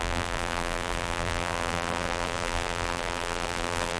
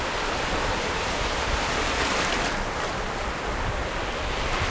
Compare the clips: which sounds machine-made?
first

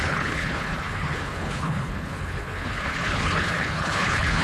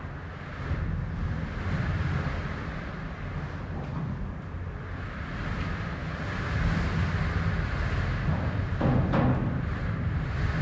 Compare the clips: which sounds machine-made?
first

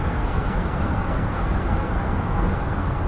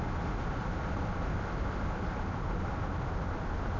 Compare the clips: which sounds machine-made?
first